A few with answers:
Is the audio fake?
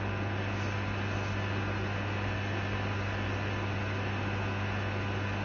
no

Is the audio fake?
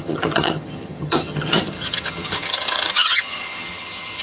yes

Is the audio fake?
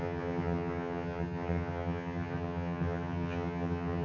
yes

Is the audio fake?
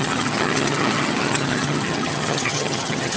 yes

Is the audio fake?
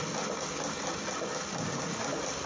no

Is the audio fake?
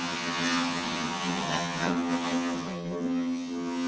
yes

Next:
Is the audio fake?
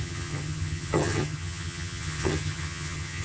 yes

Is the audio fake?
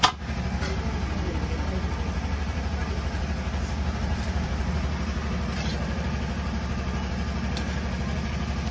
no